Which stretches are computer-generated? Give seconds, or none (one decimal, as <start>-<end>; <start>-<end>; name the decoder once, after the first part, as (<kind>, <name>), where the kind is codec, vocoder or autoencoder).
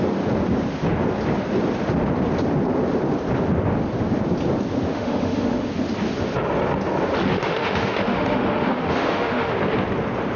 4.9-5.7 (autoencoder, DAC-VAE); 7.3-9.5